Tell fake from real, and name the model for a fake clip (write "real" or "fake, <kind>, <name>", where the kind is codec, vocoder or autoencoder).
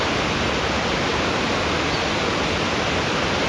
real